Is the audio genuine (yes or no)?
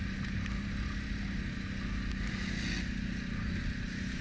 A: yes